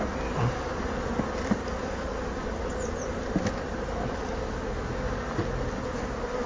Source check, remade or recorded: recorded